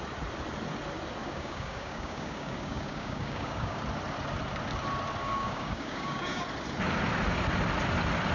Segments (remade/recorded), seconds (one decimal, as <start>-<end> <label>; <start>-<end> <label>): 0.0-1.2 recorded; 1.2-3.8 remade; 3.8-5.2 recorded; 5.2-6.4 remade; 6.4-8.3 recorded